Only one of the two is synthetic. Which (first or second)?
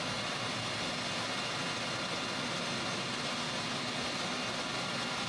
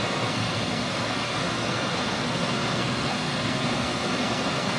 second